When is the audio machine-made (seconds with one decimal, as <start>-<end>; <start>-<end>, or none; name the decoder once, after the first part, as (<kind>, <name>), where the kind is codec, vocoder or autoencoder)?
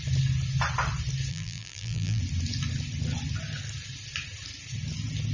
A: 1.3-2.2 (vocoder, BigVGAN v2)